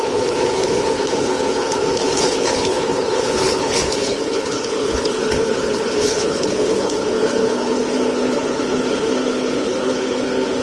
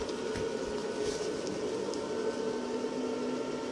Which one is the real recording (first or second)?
second